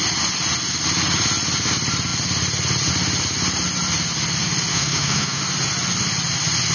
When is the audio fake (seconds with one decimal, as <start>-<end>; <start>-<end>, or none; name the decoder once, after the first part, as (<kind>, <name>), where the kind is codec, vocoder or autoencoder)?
4.7-5.4 (autoencoder, DAC-VAE)